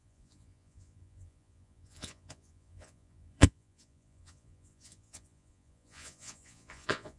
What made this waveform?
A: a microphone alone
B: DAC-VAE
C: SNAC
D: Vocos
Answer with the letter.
D